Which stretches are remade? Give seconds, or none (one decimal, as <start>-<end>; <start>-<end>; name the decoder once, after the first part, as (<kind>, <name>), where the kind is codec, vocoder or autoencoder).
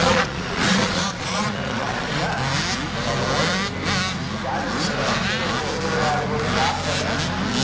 0.0-2.2 (vocoder, Vocos)